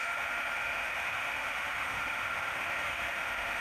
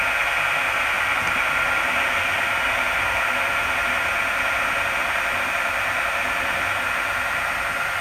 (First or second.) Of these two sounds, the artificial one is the first